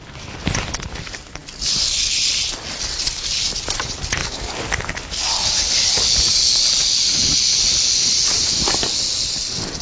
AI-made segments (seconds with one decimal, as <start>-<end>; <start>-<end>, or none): none

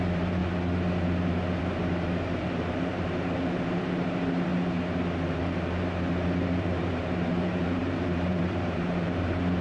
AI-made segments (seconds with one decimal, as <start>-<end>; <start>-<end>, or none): 0.0-0.4; 1.6-4.5; 5.4-9.6